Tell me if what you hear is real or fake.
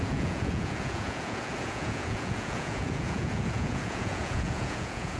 fake